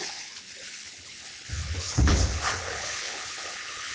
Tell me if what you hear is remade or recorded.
remade